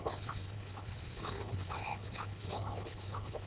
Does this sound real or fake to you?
fake